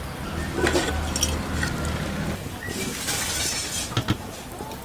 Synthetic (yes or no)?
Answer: no